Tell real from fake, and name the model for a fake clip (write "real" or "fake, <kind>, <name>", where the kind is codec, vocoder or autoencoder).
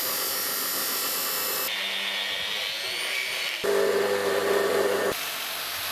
real